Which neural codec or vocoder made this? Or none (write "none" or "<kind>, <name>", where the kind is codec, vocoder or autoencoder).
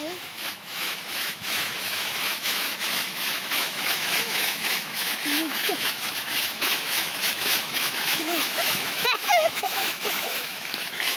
autoencoder, DAC-VAE